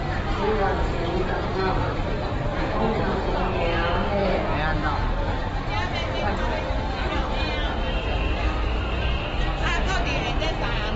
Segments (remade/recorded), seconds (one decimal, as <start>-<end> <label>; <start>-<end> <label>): 0.0-1.8 recorded; 1.8-3.0 remade; 3.0-11.0 recorded